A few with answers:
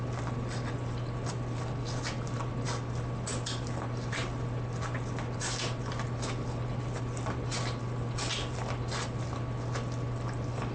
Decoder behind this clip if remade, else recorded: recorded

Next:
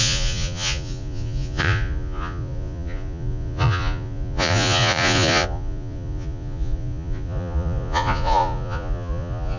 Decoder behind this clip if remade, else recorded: remade, vocoder, Vocos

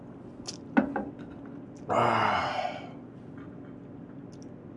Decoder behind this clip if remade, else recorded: recorded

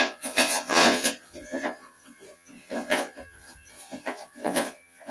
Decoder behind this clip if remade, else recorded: remade, vocoder, Vocos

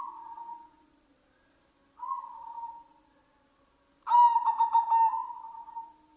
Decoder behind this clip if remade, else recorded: recorded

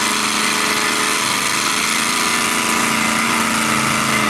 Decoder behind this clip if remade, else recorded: recorded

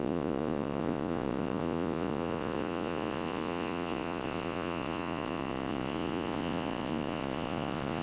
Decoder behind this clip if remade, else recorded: remade, vocoder, Vocos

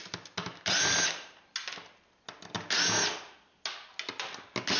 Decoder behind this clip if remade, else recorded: recorded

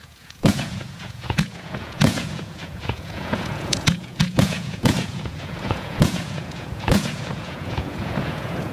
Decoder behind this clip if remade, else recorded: remade, vocoder, Vocos